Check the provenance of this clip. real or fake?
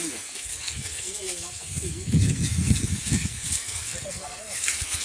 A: fake